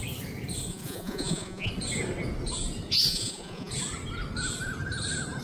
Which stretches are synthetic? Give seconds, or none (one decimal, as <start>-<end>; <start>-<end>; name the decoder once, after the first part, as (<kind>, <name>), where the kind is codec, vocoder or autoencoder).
0.7-1.7 (vocoder, Vocos); 3.1-3.7